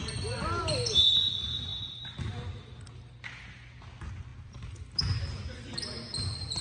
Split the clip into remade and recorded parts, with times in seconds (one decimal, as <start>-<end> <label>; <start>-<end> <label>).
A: 0.0-6.6 recorded